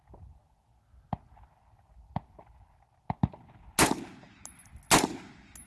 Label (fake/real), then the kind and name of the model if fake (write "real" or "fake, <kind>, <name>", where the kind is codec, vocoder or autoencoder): real